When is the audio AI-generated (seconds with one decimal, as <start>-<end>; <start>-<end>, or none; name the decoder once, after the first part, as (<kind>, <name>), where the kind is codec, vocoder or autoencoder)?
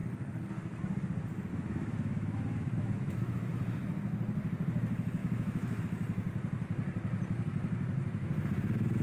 1.5-3.5 (autoencoder, DAC-VAE); 5.2-5.8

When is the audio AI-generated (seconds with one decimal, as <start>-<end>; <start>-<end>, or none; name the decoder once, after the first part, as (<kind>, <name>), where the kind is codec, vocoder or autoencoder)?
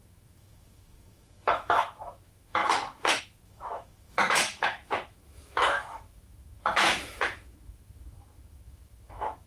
0.0-9.5 (autoencoder, DAC-VAE)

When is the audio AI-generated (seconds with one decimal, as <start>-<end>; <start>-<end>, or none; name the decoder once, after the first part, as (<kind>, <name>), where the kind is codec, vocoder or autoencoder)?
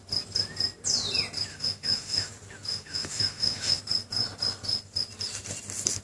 1.5-2.3 (autoencoder, DAC-VAE); 2.7-3.8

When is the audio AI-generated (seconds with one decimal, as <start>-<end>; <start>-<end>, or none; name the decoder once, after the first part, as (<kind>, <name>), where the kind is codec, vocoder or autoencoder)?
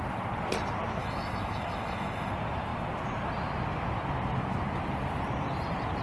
1.0-2.3 (autoencoder, DAC-VAE)